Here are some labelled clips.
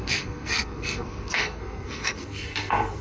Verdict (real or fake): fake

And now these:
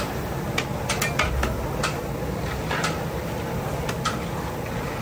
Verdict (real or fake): real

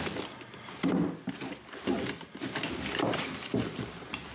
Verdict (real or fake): real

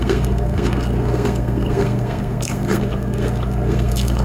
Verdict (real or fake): fake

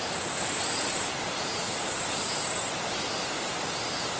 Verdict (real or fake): real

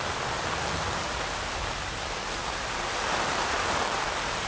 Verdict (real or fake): real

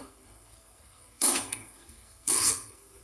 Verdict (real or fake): fake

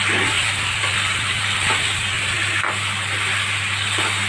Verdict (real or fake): real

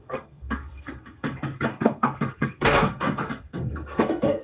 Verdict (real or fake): fake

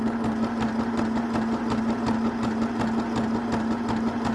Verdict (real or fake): real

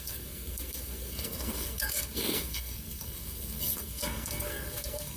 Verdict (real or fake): fake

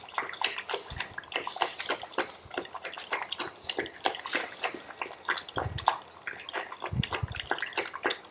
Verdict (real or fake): real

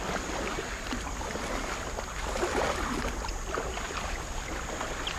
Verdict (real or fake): real